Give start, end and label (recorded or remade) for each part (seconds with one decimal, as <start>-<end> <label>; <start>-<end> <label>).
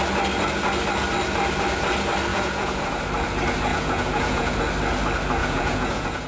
0.0-2.3 recorded; 2.3-3.0 remade; 3.0-3.7 recorded; 3.7-4.6 remade; 4.6-5.4 recorded; 5.4-6.3 remade